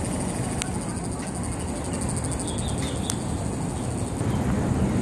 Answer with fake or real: real